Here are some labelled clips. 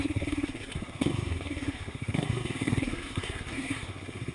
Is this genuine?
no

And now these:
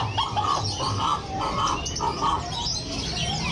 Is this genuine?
yes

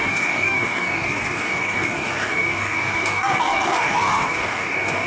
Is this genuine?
no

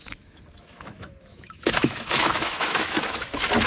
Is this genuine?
no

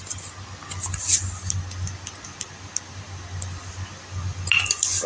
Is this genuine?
yes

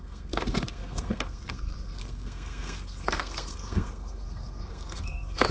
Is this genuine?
no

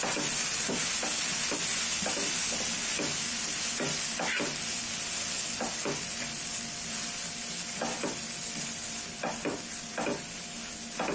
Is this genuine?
yes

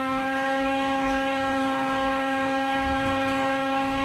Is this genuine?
no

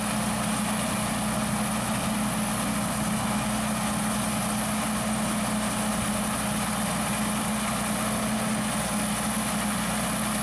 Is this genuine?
yes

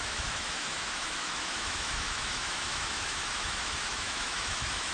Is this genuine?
no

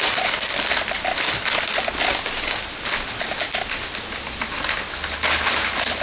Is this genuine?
yes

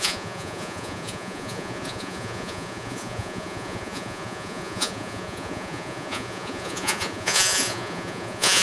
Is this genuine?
no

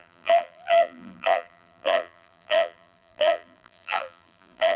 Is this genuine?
no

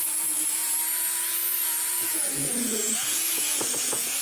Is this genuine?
no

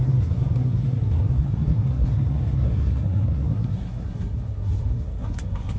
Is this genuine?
no